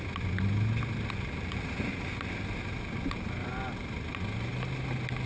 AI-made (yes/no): no